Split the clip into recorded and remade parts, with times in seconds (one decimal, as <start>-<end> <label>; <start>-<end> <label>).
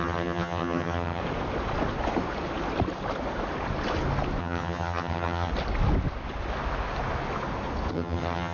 0.0-1.2 remade; 1.2-4.4 recorded; 4.4-5.5 remade; 5.5-7.9 recorded; 7.9-8.5 remade